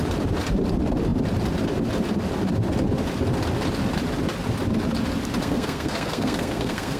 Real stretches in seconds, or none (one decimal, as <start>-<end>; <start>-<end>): 0.0-5.4